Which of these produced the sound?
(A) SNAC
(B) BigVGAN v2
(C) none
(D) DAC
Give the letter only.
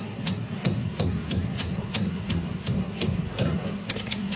A